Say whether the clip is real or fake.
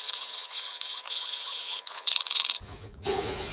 fake